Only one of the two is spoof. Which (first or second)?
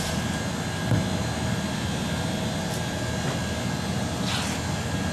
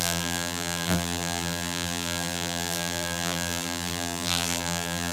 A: second